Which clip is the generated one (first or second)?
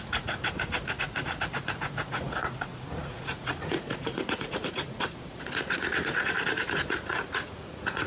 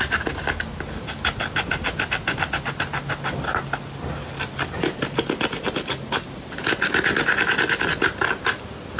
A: first